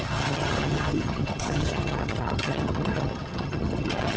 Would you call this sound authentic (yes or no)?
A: no